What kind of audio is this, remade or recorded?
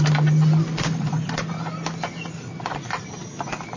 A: recorded